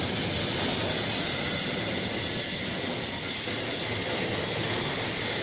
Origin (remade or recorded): recorded